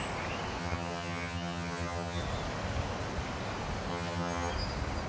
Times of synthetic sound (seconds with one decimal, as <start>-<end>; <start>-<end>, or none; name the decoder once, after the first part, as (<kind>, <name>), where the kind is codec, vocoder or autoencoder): 0.6-2.2 (vocoder, HiFi-GAN); 3.9-4.5